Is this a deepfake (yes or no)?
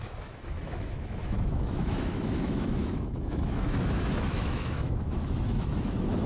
yes